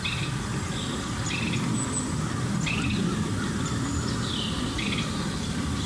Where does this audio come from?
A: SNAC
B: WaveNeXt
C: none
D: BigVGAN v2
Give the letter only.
C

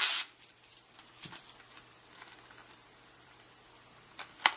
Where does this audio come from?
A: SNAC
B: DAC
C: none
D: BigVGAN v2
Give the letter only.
D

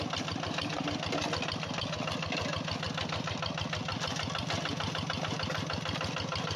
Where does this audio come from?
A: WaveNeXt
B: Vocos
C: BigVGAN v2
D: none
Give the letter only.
D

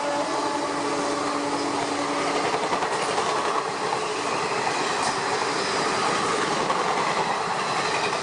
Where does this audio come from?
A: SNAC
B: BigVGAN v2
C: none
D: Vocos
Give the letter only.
C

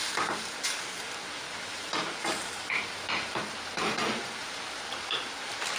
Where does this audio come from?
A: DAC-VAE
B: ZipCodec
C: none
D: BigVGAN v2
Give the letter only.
D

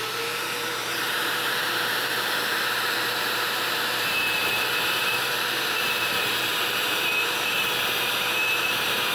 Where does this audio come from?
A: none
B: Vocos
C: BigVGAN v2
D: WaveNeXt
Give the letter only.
C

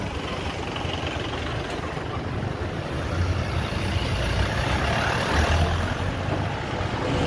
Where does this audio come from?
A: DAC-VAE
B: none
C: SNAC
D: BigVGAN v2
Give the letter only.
B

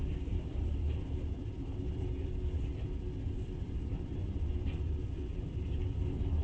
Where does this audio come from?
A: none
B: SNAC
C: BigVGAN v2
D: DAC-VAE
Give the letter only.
C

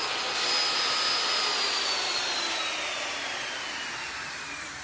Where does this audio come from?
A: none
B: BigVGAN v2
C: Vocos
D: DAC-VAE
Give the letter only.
A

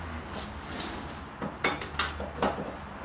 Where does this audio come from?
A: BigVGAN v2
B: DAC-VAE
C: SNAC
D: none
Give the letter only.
D